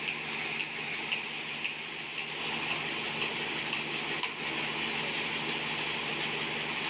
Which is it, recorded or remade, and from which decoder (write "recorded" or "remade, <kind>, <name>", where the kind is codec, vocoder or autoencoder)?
recorded